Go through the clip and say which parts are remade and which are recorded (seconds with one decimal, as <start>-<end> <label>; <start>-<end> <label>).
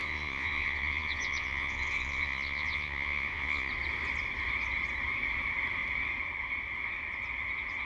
0.0-3.7 remade; 3.7-7.9 recorded